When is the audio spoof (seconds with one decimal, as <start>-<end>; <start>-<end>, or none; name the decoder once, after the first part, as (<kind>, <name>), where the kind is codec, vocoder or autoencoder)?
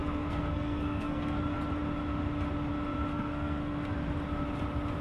0.0-1.4 (codec, SNAC); 3.1-3.9